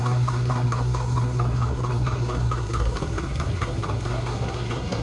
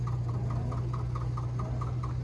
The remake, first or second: first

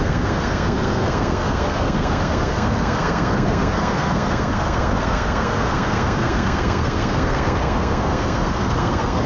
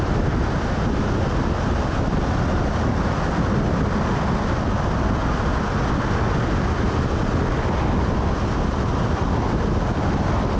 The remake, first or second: first